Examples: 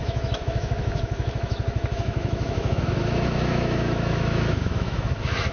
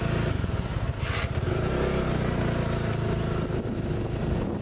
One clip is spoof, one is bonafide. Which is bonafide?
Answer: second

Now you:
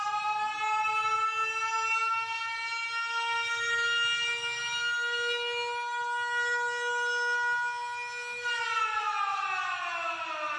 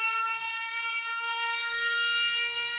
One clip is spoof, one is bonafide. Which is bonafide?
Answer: first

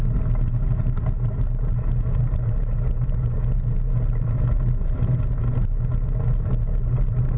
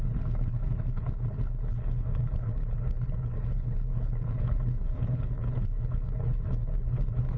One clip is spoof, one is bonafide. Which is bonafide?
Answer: first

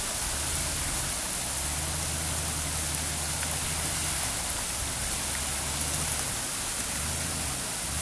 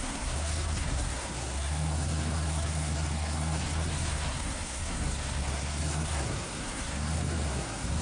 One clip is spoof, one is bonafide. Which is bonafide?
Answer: first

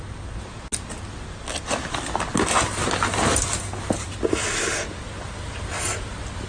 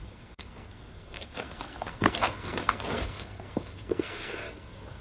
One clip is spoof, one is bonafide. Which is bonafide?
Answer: first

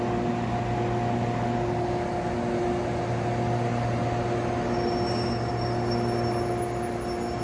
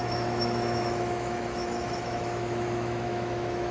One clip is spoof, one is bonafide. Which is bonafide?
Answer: first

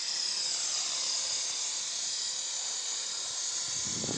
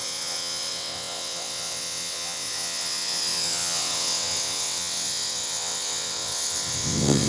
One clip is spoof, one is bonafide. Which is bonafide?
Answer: first